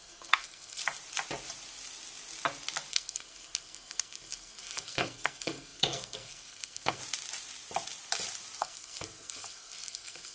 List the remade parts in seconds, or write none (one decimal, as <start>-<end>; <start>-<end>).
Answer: 0.0-0.8; 2.9-7.0; 8.6-10.3